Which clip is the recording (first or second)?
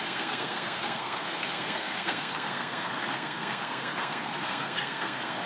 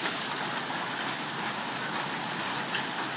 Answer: second